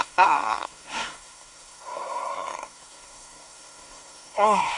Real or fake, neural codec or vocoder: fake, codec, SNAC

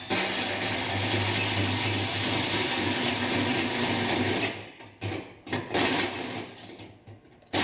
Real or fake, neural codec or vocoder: real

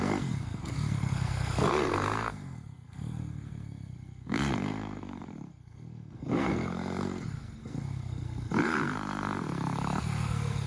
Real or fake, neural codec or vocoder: fake, codec, SNAC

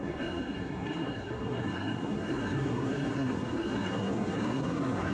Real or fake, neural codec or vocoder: fake, codec, SNAC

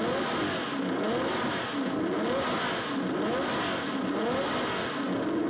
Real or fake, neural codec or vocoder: real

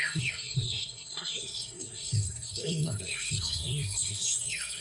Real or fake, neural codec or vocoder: fake, codec, SNAC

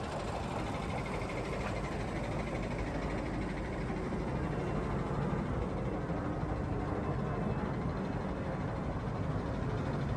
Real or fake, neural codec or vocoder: real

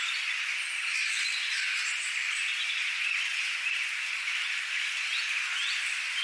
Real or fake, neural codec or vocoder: real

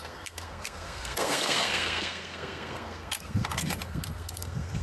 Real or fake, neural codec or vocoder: fake, codec, SNAC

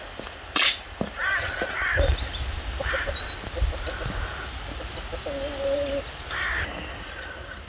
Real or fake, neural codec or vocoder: real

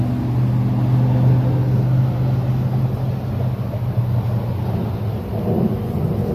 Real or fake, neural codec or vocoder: real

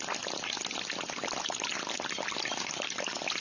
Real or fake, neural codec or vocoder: real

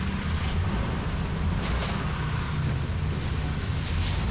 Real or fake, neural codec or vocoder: real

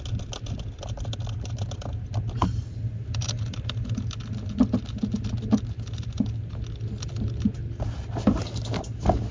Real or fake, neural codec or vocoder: real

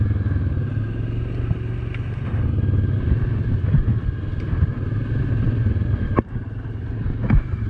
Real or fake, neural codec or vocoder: real